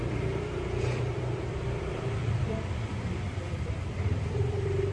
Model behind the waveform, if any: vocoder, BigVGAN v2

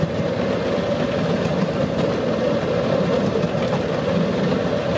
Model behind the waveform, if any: none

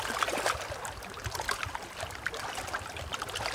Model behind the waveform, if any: none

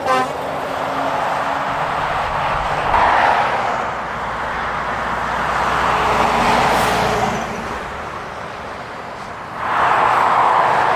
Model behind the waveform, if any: none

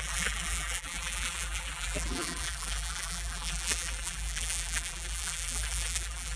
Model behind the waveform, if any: vocoder, BigVGAN v2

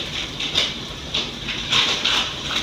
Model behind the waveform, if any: vocoder, BigVGAN v2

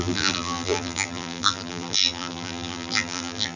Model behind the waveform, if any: vocoder, BigVGAN v2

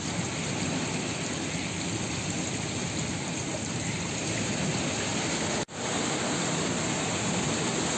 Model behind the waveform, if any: vocoder, BigVGAN v2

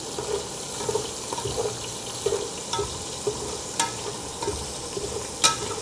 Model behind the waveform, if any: none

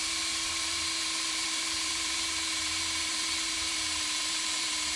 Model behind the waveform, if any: vocoder, BigVGAN v2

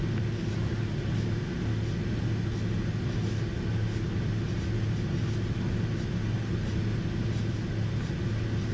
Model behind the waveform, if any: none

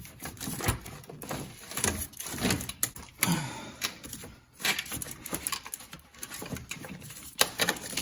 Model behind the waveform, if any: vocoder, BigVGAN v2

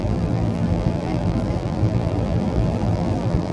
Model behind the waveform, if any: vocoder, BigVGAN v2